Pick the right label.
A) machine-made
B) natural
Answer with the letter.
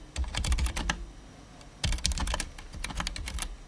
B